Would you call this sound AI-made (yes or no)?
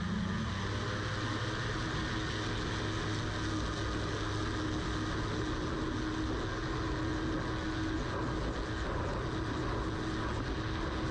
no